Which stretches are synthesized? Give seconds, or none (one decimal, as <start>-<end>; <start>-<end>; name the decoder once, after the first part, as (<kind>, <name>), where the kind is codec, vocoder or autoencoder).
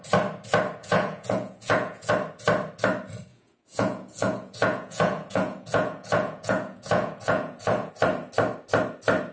0.8-2.1 (vocoder, Vocos); 3.3-7.9